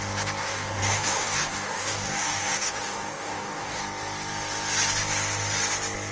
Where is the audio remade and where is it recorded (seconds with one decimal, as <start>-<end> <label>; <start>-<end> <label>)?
0.0-0.4 recorded; 0.4-3.8 remade; 3.8-6.1 recorded